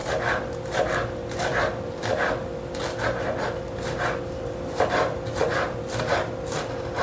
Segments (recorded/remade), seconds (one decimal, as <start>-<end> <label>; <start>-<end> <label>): 0.0-7.0 recorded